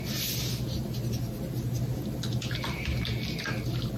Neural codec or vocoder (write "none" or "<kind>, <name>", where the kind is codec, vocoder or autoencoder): none